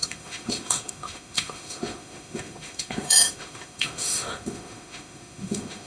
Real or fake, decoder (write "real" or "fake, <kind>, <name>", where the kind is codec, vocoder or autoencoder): fake, autoencoder, DAC-VAE